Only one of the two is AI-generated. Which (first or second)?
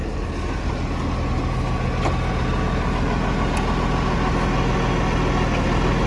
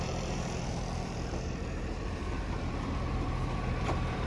second